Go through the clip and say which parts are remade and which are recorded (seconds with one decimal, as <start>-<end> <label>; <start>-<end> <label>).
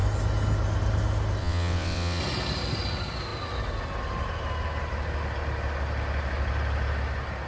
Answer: 0.0-1.4 recorded; 1.4-2.2 remade; 2.2-7.5 recorded